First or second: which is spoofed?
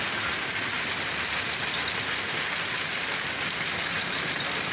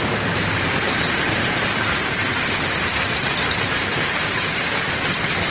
second